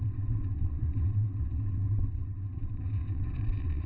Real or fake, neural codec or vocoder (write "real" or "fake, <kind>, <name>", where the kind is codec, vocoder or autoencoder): fake, vocoder, WaveNeXt